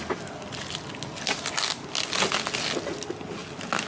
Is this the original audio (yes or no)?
yes